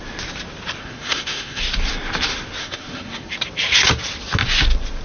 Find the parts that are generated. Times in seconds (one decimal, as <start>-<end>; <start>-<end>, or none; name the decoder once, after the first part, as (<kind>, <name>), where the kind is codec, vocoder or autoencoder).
0.8-1.6 (codec, SNAC); 2.6-3.3